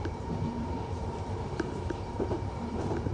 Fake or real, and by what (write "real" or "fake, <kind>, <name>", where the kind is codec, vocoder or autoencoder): fake, vocoder, BigVGAN v2